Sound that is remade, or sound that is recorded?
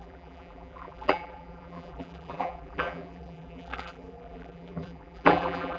remade